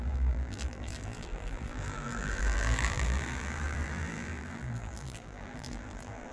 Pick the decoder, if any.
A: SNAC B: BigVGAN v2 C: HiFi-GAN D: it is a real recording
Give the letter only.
B